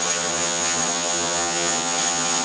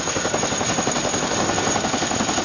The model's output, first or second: first